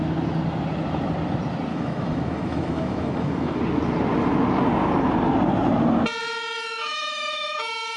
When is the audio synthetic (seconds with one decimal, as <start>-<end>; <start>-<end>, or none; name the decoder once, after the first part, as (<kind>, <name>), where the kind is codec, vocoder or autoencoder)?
1.7-3.6 (autoencoder, DAC-VAE); 6.2-8.0